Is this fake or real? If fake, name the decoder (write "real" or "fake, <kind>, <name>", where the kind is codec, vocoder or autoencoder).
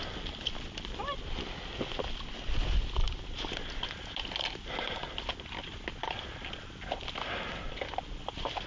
real